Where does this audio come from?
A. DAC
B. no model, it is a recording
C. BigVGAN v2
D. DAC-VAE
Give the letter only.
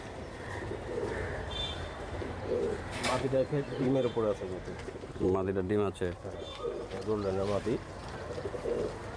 C